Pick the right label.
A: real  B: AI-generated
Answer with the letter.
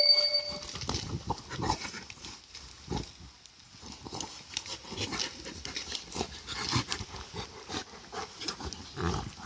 A